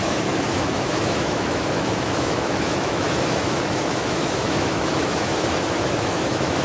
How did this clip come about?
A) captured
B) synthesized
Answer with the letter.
B